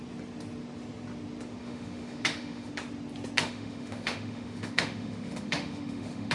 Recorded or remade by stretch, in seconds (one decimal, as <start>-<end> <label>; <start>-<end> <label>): 0.0-1.6 recorded; 1.6-2.7 remade; 2.7-3.4 recorded; 3.4-6.3 remade